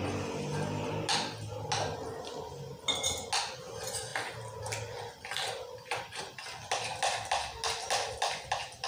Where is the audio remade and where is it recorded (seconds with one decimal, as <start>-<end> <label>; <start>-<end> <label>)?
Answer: 0.0-4.1 recorded; 4.1-6.2 remade; 6.2-8.9 recorded